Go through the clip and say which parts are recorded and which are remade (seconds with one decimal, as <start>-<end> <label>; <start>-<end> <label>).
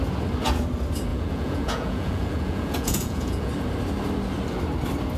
0.0-1.1 recorded; 1.1-3.5 remade; 3.5-5.2 recorded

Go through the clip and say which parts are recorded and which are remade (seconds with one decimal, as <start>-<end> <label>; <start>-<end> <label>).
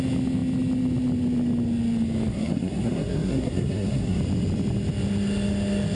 0.0-2.3 recorded; 2.3-4.2 remade; 4.2-5.9 recorded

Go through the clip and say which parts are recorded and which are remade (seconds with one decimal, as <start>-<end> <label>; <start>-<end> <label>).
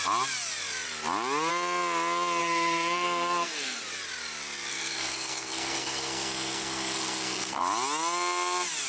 0.0-2.4 recorded; 2.4-3.8 remade; 3.8-4.7 recorded; 4.7-7.6 remade; 7.6-8.9 recorded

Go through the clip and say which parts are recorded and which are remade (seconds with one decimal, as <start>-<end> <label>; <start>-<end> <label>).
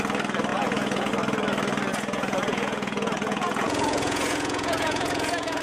0.0-0.5 recorded; 0.5-1.1 remade; 1.1-1.9 recorded; 1.9-5.6 remade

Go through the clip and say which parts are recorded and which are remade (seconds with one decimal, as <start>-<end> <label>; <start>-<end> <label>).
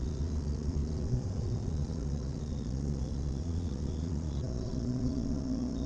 0.0-5.9 remade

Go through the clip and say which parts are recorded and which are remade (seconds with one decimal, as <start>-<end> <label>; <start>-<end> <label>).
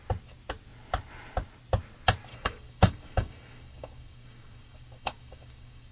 0.0-2.3 recorded; 2.3-5.9 remade